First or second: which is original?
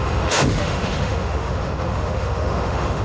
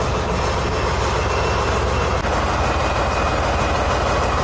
second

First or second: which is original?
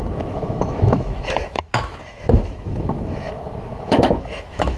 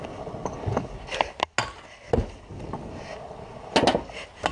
second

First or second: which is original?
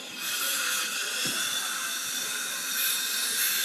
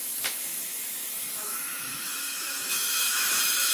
first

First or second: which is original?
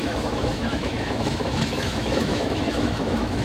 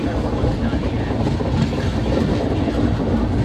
second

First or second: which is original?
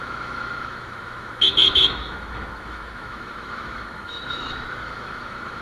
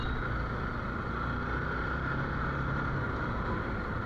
second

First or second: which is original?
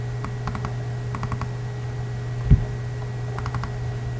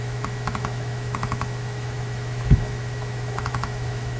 first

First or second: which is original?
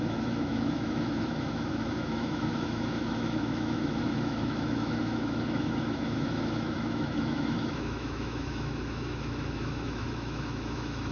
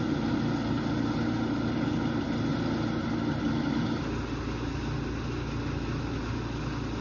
second